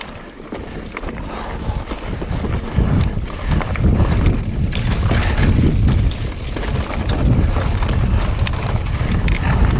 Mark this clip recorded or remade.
recorded